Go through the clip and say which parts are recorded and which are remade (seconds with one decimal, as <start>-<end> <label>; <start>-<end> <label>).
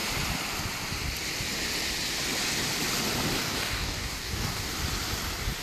0.0-3.4 recorded; 3.4-4.7 remade; 4.7-5.6 recorded